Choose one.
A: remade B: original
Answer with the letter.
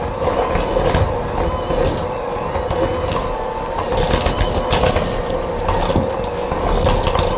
B